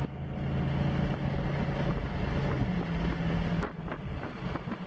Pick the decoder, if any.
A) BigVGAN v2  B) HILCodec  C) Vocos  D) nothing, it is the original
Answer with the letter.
D